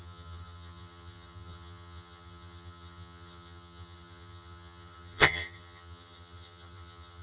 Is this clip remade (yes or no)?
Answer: yes